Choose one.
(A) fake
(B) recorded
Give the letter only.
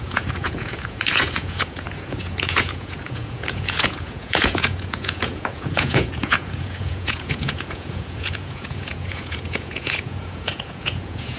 A